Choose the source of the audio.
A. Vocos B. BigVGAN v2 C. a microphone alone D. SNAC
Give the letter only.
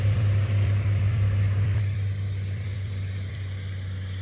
B